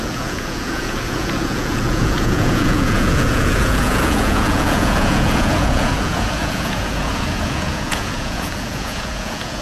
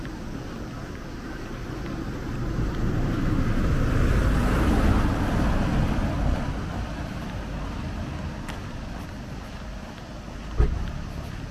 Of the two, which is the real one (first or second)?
second